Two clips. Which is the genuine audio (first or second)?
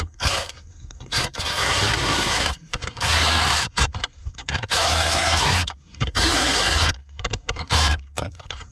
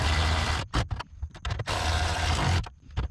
second